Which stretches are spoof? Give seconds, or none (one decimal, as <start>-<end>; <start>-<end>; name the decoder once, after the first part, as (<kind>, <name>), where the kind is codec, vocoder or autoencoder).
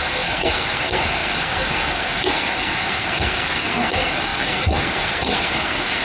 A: 0.0-6.0 (codec, SNAC)